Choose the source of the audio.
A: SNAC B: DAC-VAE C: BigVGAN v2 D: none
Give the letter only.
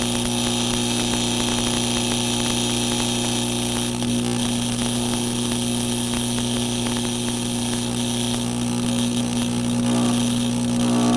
D